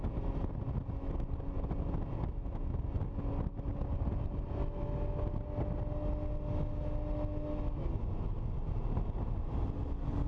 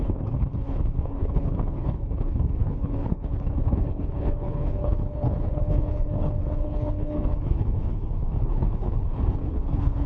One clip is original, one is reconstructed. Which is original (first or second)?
first